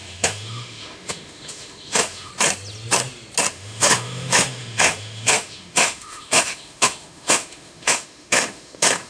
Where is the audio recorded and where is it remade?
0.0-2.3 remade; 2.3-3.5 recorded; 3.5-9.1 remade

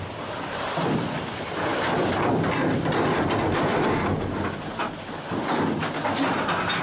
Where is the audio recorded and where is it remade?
0.0-6.8 recorded

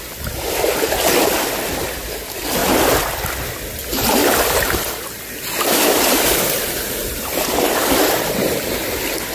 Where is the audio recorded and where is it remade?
0.0-4.2 recorded; 4.2-8.9 remade; 8.9-9.3 recorded

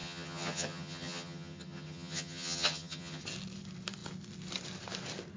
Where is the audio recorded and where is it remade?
0.0-3.2 remade; 3.2-5.4 recorded

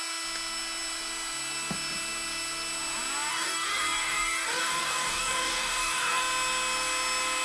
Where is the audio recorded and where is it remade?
0.0-3.3 recorded; 3.3-6.2 remade; 6.2-7.4 recorded